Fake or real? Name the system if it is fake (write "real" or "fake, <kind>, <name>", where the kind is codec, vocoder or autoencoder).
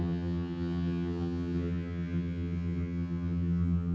fake, vocoder, HiFi-GAN